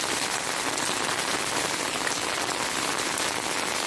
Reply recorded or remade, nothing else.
recorded